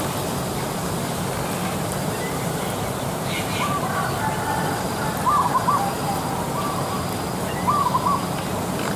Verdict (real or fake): real